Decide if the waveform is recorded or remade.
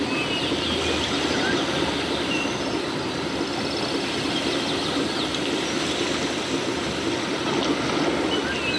recorded